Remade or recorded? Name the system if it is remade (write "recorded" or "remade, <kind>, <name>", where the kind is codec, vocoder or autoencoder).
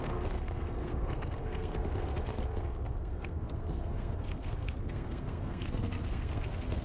remade, codec, SNAC